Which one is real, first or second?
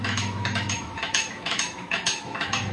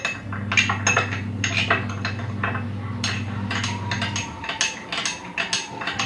second